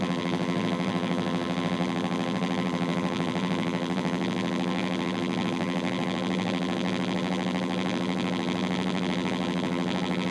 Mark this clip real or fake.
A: fake